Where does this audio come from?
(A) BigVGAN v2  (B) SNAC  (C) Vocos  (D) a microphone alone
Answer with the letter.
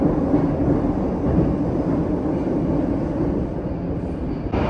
D